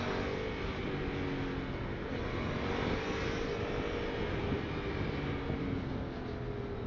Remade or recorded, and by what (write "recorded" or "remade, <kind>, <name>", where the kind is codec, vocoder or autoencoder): recorded